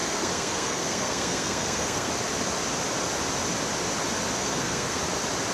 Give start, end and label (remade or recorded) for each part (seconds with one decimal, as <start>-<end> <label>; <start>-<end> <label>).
0.0-2.1 remade; 2.1-4.4 recorded; 4.4-5.0 remade; 5.0-5.5 recorded